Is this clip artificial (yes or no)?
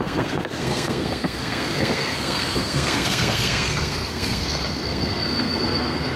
yes